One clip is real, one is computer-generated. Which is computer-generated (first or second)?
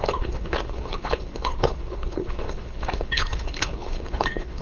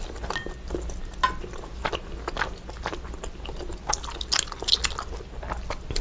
first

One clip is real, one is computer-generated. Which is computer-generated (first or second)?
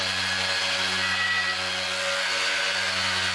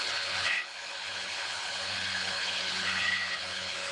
second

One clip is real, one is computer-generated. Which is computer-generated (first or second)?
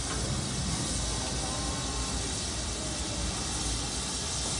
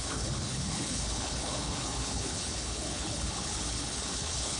second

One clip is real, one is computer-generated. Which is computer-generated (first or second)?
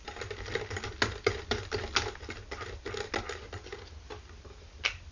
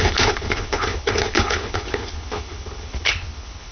second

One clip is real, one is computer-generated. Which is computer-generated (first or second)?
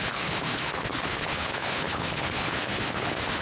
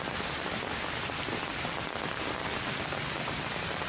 first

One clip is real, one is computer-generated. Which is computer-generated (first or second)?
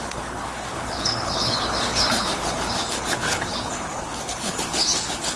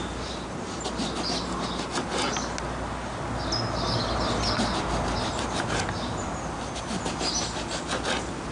first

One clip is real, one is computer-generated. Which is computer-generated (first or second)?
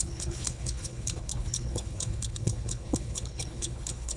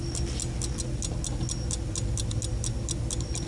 first